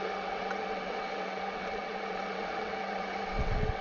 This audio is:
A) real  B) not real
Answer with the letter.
B